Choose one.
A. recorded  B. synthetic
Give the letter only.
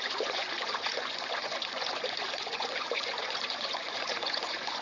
B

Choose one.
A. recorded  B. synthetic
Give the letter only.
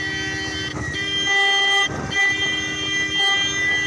A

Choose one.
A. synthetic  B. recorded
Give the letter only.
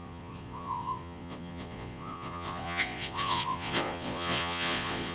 A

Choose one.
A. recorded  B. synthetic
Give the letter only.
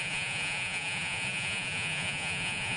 B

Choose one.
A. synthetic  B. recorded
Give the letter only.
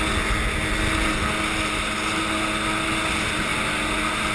B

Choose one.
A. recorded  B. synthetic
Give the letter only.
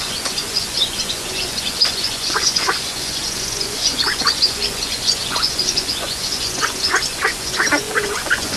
B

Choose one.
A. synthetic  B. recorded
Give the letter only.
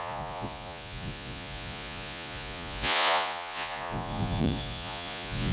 A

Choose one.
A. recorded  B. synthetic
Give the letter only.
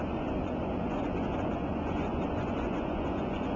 B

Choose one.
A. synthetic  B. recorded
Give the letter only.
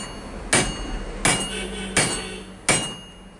B